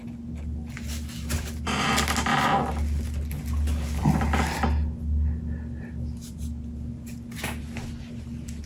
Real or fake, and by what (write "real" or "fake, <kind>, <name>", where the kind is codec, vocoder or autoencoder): real